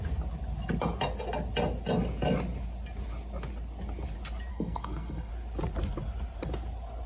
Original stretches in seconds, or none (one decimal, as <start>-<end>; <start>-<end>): 0.0-4.5; 5.3-7.1